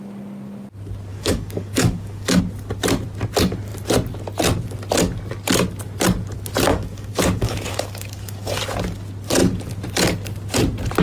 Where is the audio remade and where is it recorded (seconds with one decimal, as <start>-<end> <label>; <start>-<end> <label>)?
0.0-1.1 recorded; 1.1-2.4 remade; 2.4-6.7 recorded; 6.7-8.6 remade; 8.6-11.0 recorded